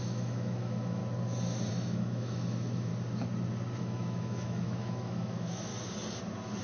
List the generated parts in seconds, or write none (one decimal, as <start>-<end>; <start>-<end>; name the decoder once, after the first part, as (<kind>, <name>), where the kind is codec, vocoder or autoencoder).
0.0-1.0 (autoencoder, DAC-VAE); 1.7-2.9; 3.8-5.7